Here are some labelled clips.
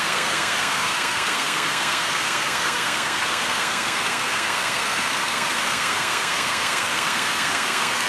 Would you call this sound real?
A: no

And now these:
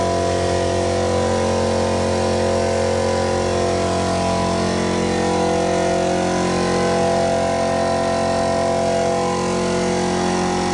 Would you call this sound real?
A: yes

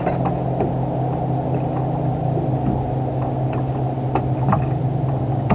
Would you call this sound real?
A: yes